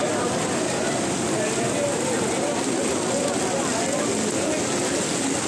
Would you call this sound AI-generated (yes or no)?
no